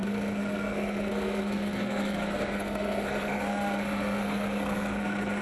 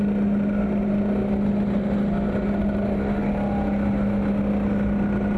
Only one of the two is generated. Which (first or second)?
first